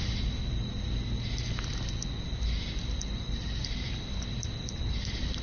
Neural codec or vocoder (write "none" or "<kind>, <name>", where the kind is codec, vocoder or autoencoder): none